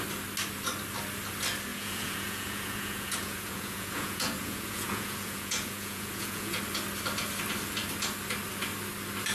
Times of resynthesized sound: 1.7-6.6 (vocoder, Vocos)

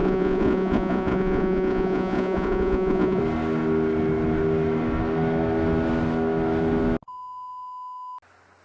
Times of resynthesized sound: 0.0-3.2 (vocoder, Vocos)

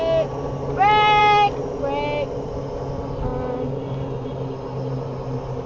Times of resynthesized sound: none